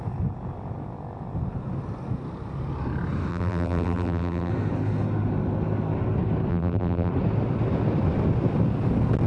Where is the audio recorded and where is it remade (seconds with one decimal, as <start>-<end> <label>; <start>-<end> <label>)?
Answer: 0.0-3.3 recorded; 3.3-4.5 remade; 4.5-6.5 recorded; 6.5-7.1 remade; 7.1-9.3 recorded